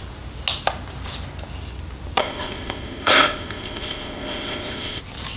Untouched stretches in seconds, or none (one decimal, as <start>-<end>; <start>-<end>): 0.0-2.2; 5.0-5.4